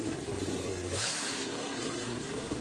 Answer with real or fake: fake